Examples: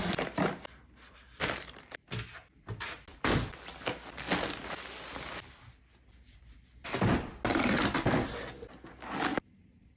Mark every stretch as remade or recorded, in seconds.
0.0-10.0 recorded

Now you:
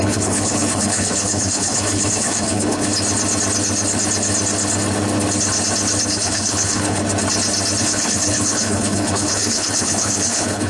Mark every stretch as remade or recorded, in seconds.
0.0-2.9 remade; 2.9-6.1 recorded; 6.1-7.0 remade; 7.0-7.8 recorded; 7.8-10.7 remade

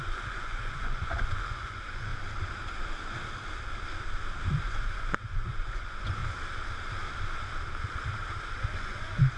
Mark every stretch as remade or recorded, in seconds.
0.0-2.1 remade; 2.1-4.5 recorded; 4.5-6.2 remade; 6.2-8.4 recorded; 8.4-9.4 remade

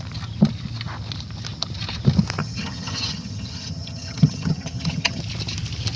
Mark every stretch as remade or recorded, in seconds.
0.0-2.4 recorded; 2.4-5.2 remade; 5.2-6.0 recorded